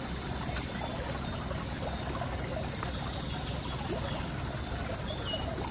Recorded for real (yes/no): yes